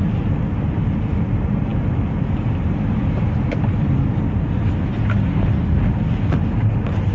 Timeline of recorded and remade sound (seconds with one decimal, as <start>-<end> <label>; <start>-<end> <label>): 0.0-7.1 recorded